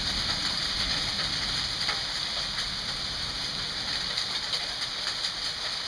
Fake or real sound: real